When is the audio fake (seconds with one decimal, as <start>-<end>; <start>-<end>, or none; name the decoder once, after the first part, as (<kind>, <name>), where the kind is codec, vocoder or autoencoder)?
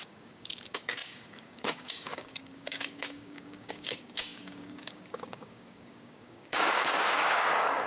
0.0-7.9 (codec, DAC)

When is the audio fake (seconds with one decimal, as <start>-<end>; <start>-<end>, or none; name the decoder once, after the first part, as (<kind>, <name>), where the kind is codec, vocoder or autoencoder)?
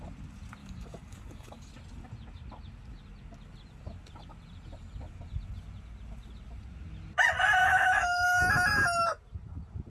0.6-1.7 (codec, DAC); 7.6-8.4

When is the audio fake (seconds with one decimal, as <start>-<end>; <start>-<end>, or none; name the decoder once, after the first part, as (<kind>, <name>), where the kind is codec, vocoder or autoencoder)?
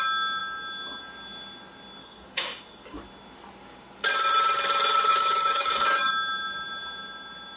2.0-3.0 (codec, DAC); 5.1-6.1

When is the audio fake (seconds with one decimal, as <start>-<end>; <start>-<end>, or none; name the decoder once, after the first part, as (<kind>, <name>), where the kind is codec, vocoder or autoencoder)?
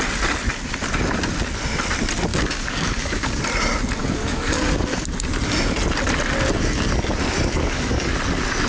2.3-3.4 (codec, DAC); 4.0-4.7; 7.6-8.1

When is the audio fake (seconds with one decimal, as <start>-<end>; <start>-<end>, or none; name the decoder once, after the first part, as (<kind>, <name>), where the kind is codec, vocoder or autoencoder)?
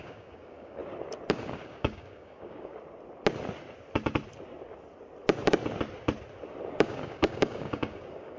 0.0-0.8 (codec, DAC); 1.3-2.7; 6.7-8.4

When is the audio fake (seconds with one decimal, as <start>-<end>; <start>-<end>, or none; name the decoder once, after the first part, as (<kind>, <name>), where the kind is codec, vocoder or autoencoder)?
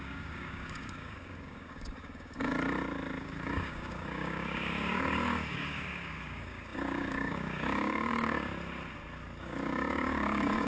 0.0-2.5 (codec, DAC); 3.2-8.5; 9.4-10.7